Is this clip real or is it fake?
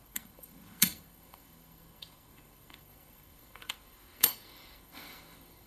fake